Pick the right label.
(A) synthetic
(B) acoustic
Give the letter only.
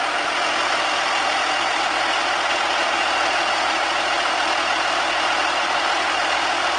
B